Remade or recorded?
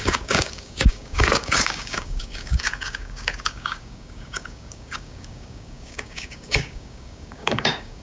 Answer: remade